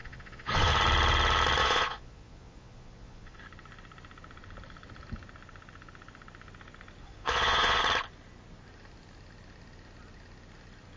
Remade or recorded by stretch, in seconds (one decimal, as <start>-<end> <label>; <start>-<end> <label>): 0.0-0.7 remade; 0.7-1.6 recorded; 1.6-3.4 remade; 3.4-7.0 recorded; 7.0-7.8 remade; 7.8-11.0 recorded